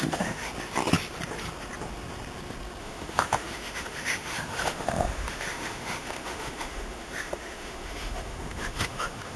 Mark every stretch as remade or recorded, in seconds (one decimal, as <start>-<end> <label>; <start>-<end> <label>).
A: 0.0-0.5 remade; 0.5-2.8 recorded; 2.8-9.4 remade